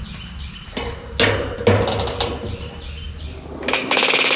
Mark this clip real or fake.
real